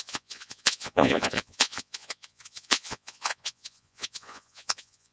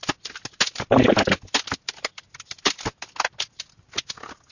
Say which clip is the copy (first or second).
first